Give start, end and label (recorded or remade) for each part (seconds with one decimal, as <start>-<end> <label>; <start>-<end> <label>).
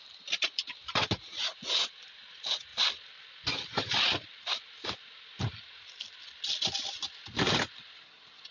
0.0-8.5 recorded